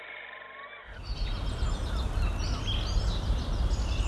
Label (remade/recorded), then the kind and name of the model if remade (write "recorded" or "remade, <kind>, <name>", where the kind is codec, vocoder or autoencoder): recorded